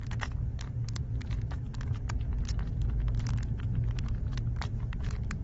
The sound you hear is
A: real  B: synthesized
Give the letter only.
A